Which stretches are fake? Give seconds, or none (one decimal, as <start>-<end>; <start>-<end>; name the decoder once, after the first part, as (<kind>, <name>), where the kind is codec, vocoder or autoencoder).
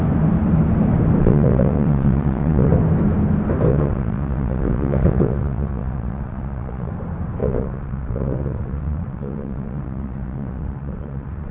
1.2-2.7 (vocoder, WaveNeXt); 3.7-6.9; 7.4-11.5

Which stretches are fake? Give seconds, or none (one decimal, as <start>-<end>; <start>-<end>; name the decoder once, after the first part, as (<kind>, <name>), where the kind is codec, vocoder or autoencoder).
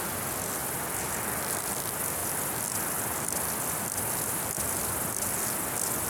2.2-6.1 (vocoder, BigVGAN v2)